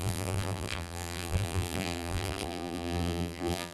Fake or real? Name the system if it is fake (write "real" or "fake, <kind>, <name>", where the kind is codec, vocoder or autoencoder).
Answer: fake, vocoder, BigVGAN v2